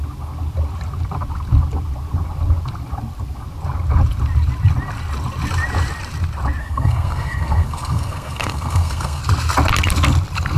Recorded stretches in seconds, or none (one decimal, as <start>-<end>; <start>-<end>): 0.0-6.6; 9.2-10.6